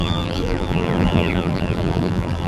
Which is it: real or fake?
fake